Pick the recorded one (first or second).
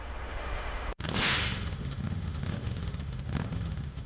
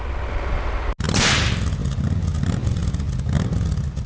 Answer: second